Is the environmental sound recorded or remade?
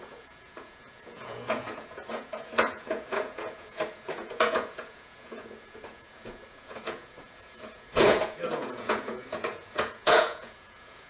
remade